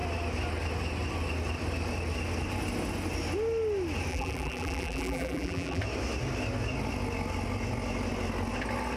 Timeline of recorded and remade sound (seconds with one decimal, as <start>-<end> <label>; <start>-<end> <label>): 0.0-4.1 recorded; 4.1-5.8 remade; 5.8-9.0 recorded